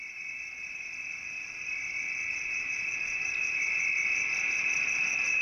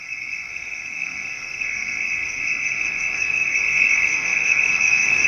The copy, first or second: second